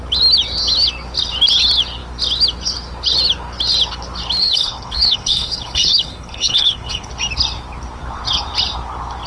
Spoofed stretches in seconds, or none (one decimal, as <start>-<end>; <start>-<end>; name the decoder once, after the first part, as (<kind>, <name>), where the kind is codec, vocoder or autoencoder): 4.4-7.1 (codec, HILCodec)

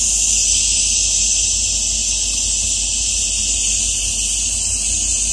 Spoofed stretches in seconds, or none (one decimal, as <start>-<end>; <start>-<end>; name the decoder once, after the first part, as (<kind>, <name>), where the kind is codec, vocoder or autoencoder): none

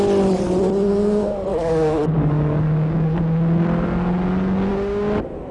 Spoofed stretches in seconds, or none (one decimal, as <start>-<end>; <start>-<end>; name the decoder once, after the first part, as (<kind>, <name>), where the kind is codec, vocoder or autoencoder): 1.5-3.2 (codec, DAC)

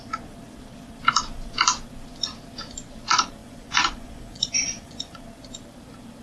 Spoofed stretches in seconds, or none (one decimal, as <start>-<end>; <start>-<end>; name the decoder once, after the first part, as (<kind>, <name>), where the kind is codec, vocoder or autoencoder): 3.4-5.2 (vocoder, Vocos)

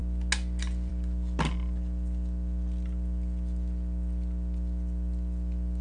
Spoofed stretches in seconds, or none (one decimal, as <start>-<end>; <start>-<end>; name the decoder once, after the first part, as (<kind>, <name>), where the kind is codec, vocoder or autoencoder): none

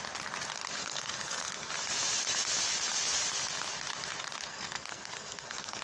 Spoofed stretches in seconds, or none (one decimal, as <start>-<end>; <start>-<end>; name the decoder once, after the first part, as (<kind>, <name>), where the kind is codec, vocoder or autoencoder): 0.8-1.7 (codec, SNAC); 4.5-5.8

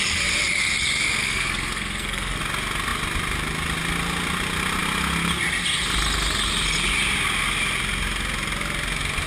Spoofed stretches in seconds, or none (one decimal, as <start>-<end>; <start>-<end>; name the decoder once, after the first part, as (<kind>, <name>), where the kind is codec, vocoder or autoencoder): 1.2-2.4 (codec, SNAC)